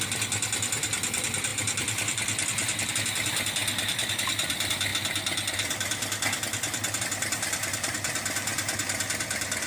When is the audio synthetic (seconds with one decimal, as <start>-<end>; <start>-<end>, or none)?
0.0-3.6; 4.1-4.9; 7.0-9.7